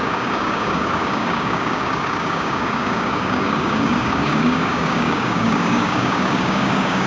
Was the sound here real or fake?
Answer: fake